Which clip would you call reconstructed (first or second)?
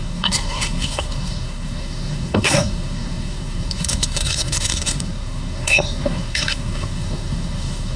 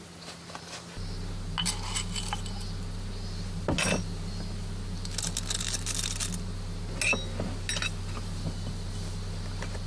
first